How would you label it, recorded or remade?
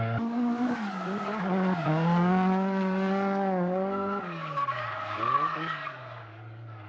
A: remade